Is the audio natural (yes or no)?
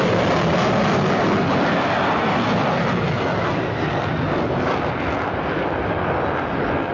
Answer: yes